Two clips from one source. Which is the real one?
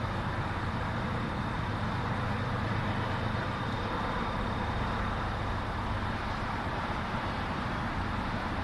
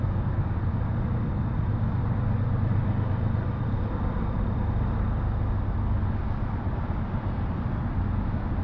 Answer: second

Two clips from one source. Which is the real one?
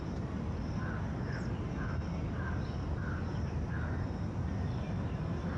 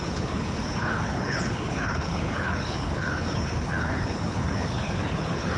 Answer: first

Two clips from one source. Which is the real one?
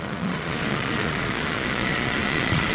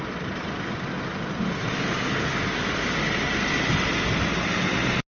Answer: second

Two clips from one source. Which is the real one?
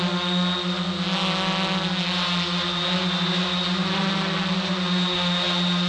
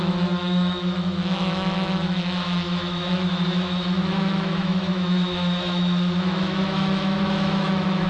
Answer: first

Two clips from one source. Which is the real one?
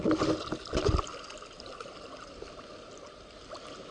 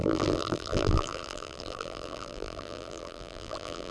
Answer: first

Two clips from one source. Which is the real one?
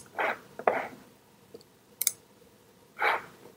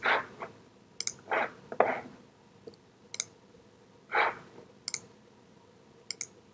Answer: second